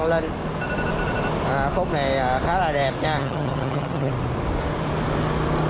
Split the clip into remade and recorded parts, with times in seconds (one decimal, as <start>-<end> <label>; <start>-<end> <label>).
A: 0.0-3.2 recorded; 3.2-4.1 remade; 4.1-5.7 recorded